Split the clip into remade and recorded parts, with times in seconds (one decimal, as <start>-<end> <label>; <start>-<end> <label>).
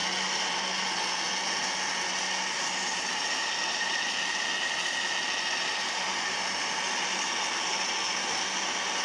0.0-9.0 recorded